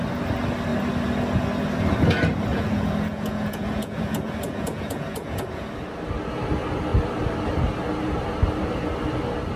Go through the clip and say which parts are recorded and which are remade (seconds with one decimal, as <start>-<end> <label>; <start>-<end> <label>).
0.0-2.5 recorded; 2.5-5.7 remade; 5.7-9.6 recorded